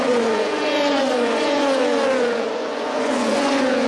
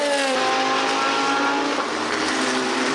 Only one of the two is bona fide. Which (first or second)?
second